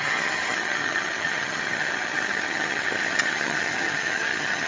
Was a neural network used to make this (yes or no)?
yes